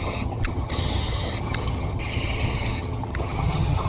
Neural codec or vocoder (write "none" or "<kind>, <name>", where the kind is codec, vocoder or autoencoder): vocoder, HiFi-GAN